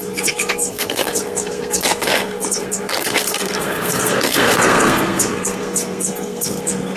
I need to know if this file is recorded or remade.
remade